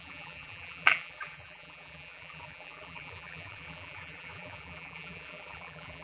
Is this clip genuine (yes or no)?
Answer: no